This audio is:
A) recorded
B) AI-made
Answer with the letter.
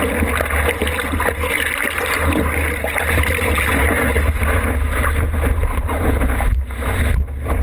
A